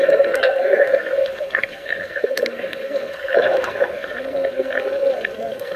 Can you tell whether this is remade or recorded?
remade